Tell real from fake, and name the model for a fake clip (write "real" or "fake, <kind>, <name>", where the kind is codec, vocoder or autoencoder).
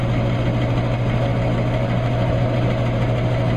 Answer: real